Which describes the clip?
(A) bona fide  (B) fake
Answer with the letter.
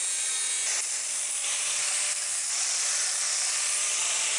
A